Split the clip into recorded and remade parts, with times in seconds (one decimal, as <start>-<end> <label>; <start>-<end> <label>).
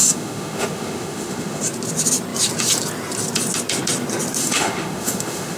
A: 0.0-1.6 remade; 1.6-4.4 recorded; 4.4-5.6 remade